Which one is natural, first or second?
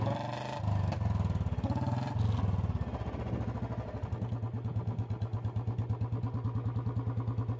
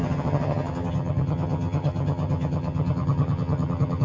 first